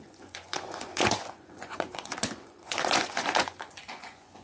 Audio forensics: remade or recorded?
remade